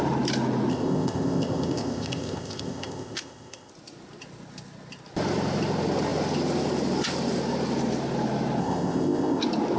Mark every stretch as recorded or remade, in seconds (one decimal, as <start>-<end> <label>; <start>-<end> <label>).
0.0-0.7 recorded; 0.7-3.7 remade; 3.7-8.6 recorded; 8.6-9.4 remade; 9.4-9.8 recorded